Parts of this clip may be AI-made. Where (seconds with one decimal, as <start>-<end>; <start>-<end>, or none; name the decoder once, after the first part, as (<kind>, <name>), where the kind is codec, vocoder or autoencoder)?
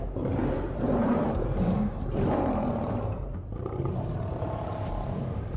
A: 0.0-5.6 (vocoder, BigVGAN v2)